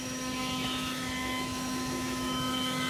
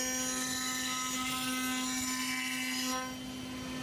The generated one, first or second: first